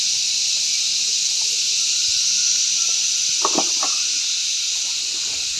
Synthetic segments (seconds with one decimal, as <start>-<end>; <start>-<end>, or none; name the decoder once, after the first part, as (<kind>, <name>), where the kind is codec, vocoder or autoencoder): none